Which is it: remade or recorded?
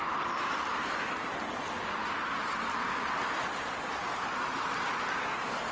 recorded